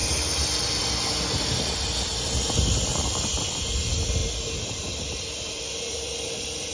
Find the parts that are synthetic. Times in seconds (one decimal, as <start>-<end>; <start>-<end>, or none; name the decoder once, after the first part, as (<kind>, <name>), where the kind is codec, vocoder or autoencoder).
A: none